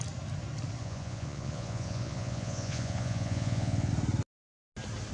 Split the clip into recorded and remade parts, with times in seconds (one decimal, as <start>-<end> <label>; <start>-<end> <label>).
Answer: 0.0-0.8 recorded; 0.8-3.9 remade; 3.9-5.1 recorded